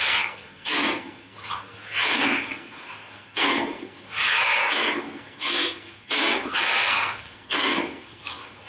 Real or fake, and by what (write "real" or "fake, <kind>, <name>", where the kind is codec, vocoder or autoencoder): fake, codec, SNAC